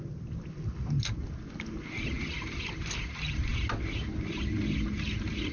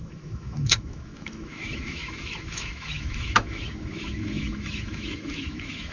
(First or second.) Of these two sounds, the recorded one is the first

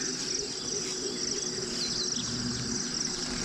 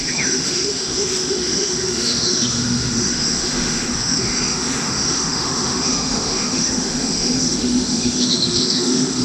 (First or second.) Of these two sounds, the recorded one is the first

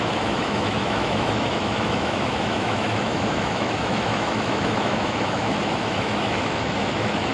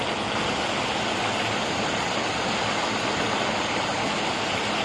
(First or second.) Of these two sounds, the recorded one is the second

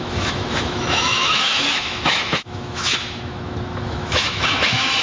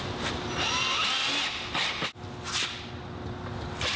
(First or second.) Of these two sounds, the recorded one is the second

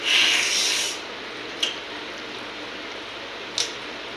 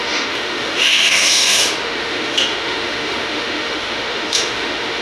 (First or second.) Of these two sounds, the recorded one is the first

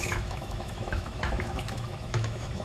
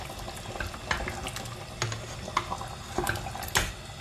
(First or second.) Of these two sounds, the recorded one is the second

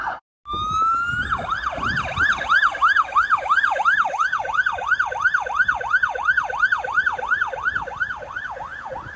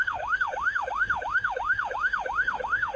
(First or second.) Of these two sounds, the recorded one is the first